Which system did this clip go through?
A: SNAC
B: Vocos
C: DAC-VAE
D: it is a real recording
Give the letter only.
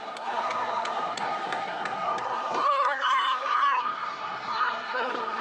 A